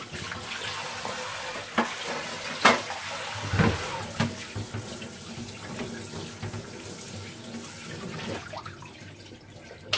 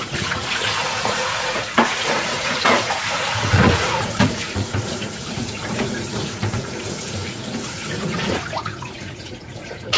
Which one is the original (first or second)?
first